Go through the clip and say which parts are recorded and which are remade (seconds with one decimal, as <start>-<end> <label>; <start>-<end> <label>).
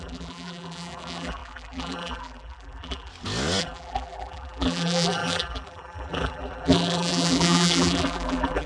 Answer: 0.0-3.1 remade; 3.1-3.6 recorded; 3.6-8.7 remade